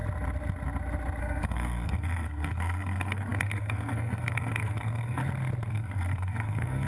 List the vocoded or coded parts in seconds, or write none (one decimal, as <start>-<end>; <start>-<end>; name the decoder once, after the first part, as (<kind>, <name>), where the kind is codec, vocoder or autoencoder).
1.2-5.2 (codec, SNAC); 5.7-6.9